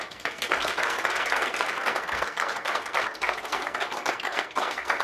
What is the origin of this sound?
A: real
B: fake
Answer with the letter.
B